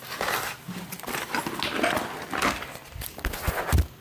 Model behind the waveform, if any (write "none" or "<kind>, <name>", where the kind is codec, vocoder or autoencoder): none